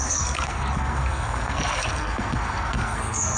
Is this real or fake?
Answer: fake